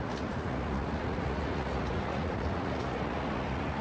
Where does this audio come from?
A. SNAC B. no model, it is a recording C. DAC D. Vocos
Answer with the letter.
D